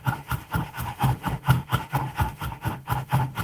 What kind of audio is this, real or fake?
fake